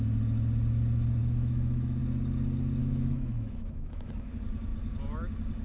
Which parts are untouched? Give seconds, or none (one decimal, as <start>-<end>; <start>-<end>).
0.0-1.2; 2.0-2.8; 4.3-5.6